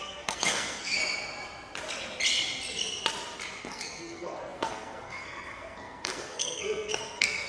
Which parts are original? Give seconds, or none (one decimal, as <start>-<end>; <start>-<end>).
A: 1.0-3.6